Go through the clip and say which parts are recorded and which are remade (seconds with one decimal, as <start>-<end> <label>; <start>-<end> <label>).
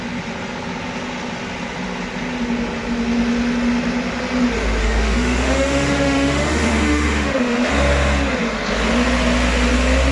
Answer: 0.0-4.8 recorded; 4.8-7.7 remade; 7.7-10.1 recorded